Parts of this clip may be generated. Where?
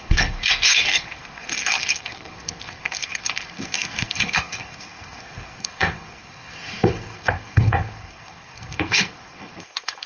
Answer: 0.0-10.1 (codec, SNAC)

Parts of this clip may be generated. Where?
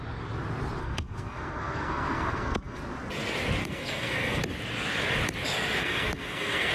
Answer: 0.8-2.8 (codec, SNAC); 3.6-4.4; 5.8-6.7